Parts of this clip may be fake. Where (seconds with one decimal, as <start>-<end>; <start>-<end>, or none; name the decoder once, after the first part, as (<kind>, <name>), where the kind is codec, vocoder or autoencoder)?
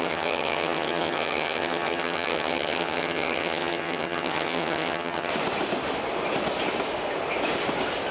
0.0-5.3 (vocoder, HiFi-GAN)